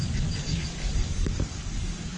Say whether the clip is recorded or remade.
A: remade